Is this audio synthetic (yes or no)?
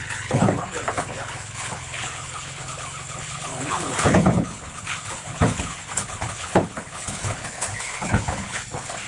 yes